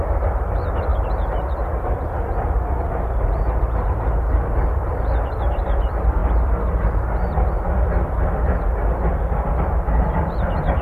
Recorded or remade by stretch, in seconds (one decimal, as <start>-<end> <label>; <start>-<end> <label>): 0.0-10.8 remade